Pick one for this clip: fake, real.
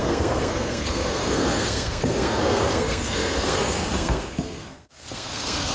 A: fake